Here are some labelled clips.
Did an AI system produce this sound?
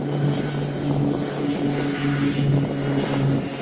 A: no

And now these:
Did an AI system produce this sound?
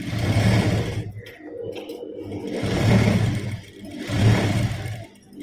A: no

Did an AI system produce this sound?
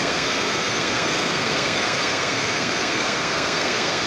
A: yes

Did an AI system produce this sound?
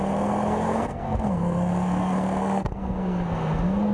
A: yes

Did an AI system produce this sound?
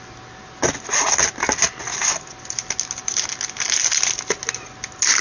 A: no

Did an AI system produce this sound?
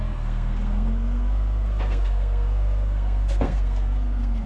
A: yes